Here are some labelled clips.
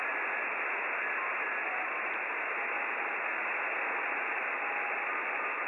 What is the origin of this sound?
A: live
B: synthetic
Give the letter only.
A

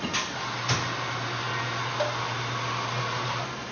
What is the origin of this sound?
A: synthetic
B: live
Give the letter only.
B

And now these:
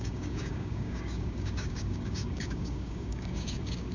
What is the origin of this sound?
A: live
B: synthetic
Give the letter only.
B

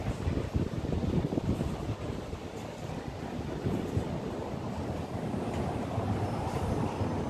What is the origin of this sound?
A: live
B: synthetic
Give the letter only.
A